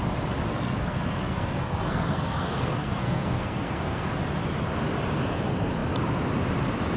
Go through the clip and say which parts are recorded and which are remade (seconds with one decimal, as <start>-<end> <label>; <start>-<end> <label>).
0.0-0.5 recorded; 0.5-4.1 remade; 4.1-7.0 recorded